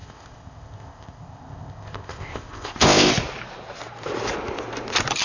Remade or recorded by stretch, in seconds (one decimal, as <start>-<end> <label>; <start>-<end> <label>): 0.0-3.1 remade; 3.1-5.2 recorded